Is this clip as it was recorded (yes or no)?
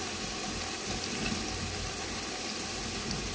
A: yes